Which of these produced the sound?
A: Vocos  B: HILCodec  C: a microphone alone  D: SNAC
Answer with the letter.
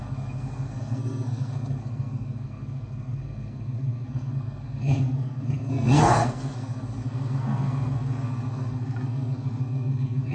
D